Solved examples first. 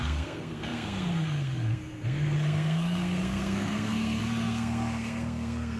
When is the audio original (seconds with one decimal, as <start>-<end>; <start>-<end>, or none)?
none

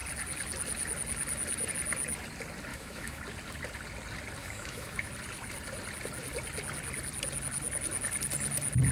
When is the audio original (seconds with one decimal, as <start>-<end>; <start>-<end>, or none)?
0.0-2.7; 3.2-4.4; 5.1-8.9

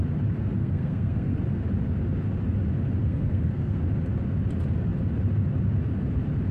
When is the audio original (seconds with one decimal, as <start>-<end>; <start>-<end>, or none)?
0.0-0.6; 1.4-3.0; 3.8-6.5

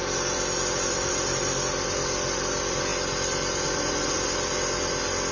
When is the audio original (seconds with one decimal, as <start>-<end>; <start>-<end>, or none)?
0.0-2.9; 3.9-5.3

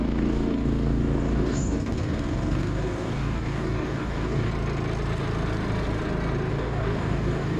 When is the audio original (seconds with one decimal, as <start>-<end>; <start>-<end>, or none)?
4.5-6.5

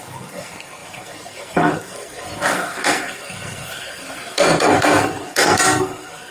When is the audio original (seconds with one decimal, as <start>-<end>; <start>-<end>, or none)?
none